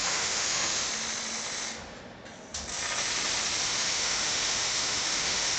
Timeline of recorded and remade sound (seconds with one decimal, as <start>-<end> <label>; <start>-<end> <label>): 0.0-0.9 remade; 0.9-3.7 recorded; 3.7-5.6 remade